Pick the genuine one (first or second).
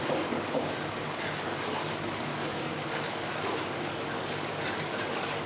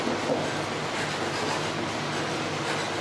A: second